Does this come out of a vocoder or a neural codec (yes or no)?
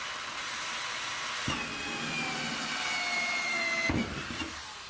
no